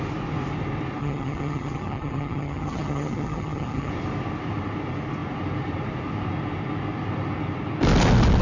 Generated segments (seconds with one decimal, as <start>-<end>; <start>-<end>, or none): 1.0-3.9